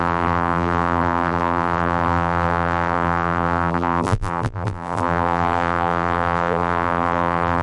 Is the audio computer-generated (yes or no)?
yes